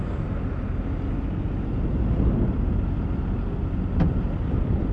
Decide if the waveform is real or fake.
real